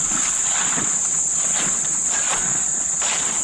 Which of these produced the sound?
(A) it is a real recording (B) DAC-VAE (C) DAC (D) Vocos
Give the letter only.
D